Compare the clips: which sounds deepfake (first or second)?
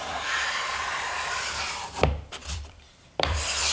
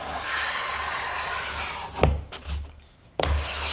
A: first